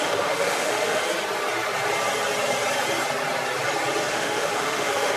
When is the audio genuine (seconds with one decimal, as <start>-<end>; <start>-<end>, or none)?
1.0-4.1